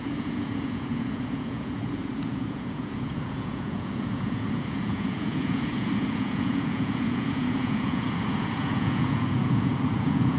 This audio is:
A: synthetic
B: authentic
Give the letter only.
A